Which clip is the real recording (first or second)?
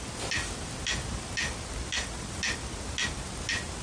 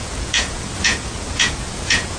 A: first